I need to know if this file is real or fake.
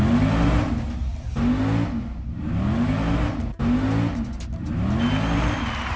real